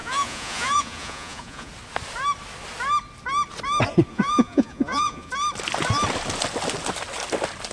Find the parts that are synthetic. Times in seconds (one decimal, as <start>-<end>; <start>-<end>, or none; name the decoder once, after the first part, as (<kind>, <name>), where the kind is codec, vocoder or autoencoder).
0.0-1.7 (vocoder, Vocos); 4.1-5.3